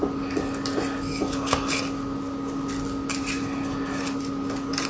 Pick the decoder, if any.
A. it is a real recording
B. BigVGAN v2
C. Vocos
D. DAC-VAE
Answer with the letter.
A